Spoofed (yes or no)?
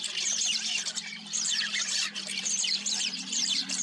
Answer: yes